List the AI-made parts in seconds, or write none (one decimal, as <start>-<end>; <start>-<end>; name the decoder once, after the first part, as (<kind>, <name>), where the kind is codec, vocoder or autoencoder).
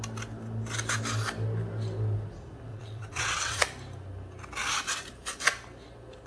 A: 2.7-3.6 (vocoder, WaveNeXt)